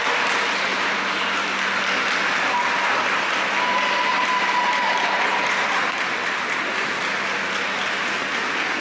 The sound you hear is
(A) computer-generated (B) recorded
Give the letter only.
B